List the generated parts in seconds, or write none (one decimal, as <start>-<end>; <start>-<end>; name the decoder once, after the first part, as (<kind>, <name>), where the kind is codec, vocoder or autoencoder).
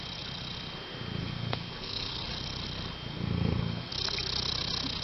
1.2-2.2 (codec, SNAC); 3.1-3.9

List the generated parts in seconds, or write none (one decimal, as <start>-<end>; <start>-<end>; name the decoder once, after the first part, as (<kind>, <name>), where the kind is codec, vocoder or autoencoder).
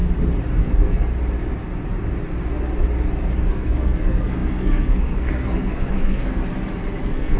0.6-1.1 (codec, SNAC); 3.4-6.4; 7.0-7.4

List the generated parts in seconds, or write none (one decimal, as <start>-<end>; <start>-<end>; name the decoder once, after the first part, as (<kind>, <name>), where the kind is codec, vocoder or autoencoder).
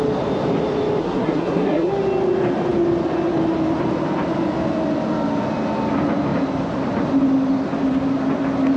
1.0-1.9 (codec, SNAC)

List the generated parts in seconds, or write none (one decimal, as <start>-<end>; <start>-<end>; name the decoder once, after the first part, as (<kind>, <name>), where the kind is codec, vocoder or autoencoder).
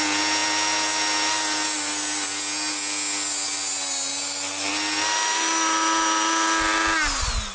none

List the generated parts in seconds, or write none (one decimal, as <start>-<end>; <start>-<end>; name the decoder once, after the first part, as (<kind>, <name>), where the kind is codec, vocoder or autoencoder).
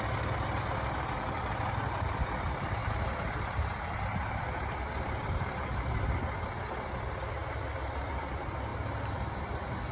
none